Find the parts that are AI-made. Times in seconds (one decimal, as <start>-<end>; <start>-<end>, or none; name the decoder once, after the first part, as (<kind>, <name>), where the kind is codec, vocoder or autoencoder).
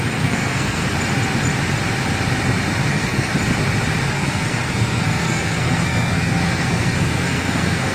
0.0-0.8 (codec, SNAC); 2.9-3.3; 4.1-7.9